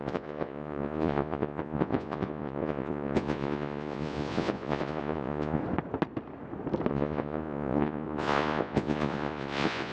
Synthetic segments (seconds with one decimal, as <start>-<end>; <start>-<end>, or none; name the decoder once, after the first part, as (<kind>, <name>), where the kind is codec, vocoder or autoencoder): 0.0-5.6 (vocoder, Vocos); 6.9-9.9